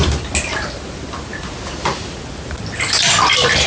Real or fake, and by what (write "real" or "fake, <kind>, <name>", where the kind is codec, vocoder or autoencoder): real